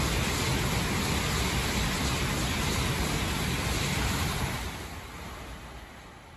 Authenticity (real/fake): real